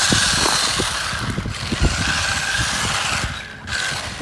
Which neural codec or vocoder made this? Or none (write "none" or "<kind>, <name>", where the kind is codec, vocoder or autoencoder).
none